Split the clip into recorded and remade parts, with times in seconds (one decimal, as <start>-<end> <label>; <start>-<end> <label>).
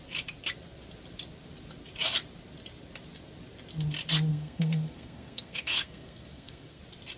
0.0-4.3 recorded; 4.3-6.8 remade; 6.8-7.2 recorded